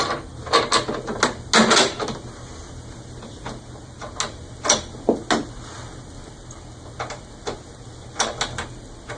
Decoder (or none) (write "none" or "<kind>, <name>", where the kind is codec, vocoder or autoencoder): none